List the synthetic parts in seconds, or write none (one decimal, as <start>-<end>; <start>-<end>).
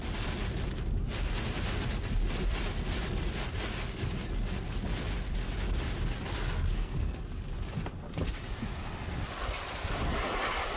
6.7-7.2